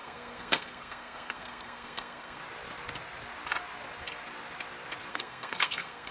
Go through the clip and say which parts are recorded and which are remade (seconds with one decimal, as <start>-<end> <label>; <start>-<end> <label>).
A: 0.0-2.4 remade; 2.4-5.1 recorded; 5.1-6.1 remade